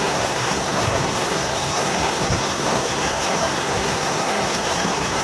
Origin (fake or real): fake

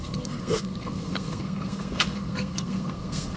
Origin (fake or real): fake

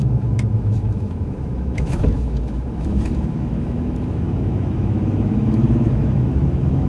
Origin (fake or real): fake